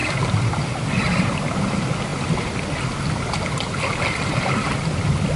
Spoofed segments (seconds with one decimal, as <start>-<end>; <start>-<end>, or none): none